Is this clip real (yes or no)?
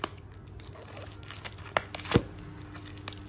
yes